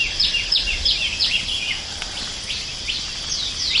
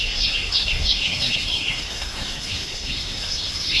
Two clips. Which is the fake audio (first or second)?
second